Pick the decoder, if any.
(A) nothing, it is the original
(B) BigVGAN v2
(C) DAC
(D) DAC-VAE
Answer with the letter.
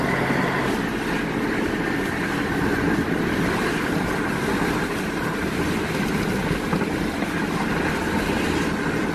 A